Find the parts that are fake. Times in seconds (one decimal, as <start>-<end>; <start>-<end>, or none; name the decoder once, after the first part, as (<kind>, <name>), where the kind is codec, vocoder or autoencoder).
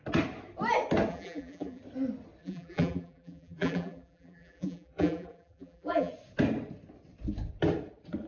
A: 1.1-1.8 (vocoder, BigVGAN v2); 2.4-6.1